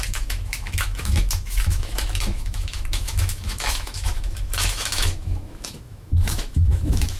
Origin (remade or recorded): remade